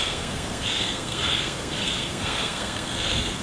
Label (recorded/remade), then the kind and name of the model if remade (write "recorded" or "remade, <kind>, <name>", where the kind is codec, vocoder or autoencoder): remade, codec, SNAC